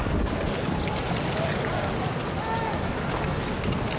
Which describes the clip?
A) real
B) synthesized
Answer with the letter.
A